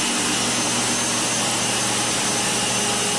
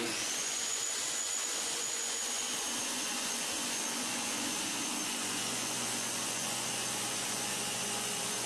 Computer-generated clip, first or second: second